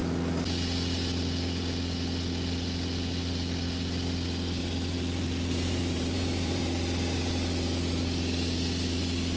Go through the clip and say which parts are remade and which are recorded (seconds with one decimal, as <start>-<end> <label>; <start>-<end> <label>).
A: 0.0-4.6 recorded; 4.6-6.6 remade; 6.6-9.4 recorded